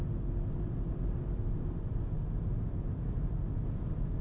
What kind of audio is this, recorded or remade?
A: recorded